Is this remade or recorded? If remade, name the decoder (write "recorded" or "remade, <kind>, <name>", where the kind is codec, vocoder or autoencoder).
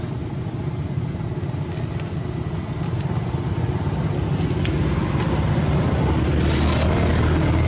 recorded